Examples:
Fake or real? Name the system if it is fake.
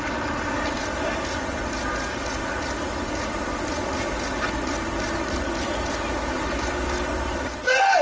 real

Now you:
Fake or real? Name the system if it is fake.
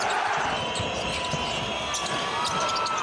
real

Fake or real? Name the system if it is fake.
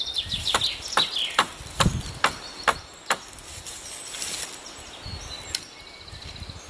real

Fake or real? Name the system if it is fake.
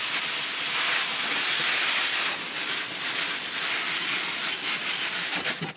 real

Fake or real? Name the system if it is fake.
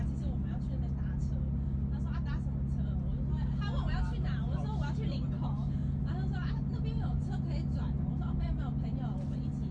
real